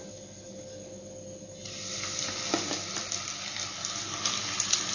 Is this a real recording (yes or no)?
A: yes